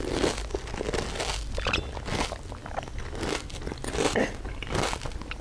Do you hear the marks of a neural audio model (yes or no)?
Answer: no